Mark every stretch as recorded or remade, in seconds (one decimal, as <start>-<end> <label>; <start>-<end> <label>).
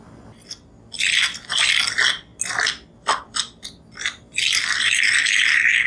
0.0-5.9 recorded